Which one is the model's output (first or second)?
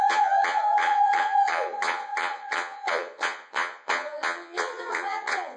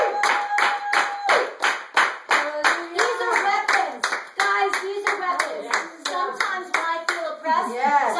first